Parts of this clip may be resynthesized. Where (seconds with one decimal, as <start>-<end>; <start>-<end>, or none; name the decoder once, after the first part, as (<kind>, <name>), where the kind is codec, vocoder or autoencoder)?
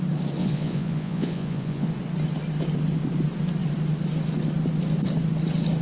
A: 0.4-1.9 (vocoder, Vocos)